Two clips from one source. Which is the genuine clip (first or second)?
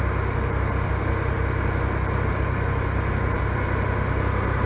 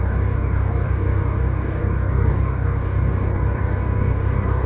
first